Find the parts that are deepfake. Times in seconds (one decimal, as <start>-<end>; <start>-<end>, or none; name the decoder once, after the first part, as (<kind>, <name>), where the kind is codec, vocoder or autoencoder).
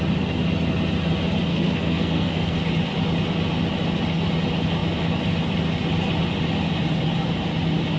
1.5-2.6 (codec, SNAC)